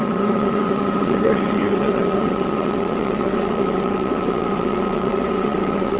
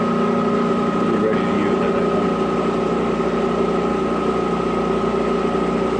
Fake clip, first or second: first